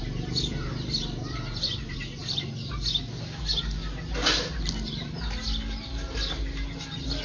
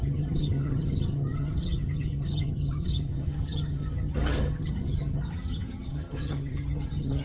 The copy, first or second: second